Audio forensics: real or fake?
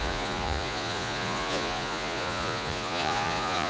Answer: fake